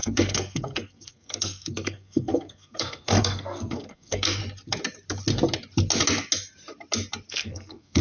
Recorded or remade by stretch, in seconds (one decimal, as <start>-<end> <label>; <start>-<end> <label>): 0.0-4.4 remade; 4.4-7.3 recorded; 7.3-8.0 remade